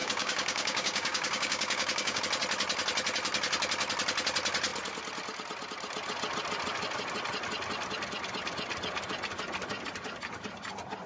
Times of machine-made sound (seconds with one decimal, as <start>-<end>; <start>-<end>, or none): 0.0-2.2